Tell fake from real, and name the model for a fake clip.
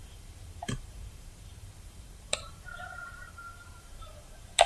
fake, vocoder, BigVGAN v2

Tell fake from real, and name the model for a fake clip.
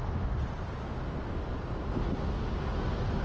real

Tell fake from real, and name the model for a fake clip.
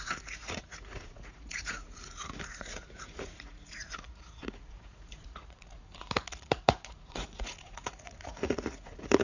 fake, vocoder, Vocos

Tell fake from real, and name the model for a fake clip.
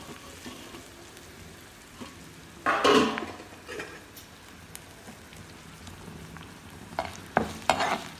real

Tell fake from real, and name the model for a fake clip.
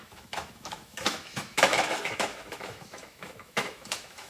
fake, autoencoder, DAC-VAE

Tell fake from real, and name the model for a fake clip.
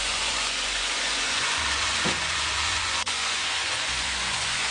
fake, vocoder, Vocos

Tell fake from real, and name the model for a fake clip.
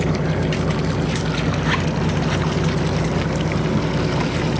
real